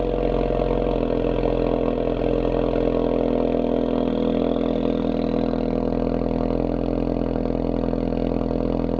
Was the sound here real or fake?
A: real